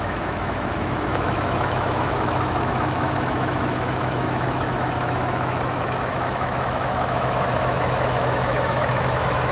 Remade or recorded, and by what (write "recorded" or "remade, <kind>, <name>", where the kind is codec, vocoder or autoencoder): remade, autoencoder, DAC-VAE